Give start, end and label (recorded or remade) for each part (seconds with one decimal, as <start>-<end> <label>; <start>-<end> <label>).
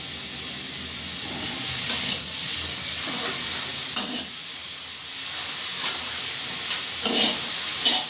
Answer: 0.0-8.1 recorded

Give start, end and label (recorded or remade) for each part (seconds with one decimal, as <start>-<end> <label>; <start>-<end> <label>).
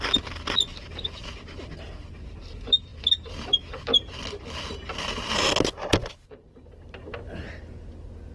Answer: 0.0-6.0 recorded; 6.0-6.7 remade; 6.7-8.3 recorded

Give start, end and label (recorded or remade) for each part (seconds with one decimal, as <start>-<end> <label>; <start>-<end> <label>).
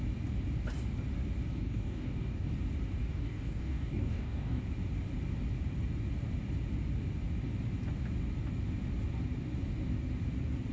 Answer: 0.0-1.6 recorded; 1.6-2.5 remade; 2.5-3.0 recorded; 3.0-4.6 remade; 4.6-10.7 recorded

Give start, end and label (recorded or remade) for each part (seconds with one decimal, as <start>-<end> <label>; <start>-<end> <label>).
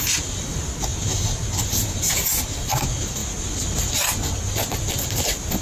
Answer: 0.0-5.6 recorded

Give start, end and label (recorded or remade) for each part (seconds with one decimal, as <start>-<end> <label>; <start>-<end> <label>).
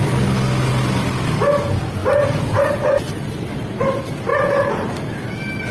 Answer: 0.0-5.7 recorded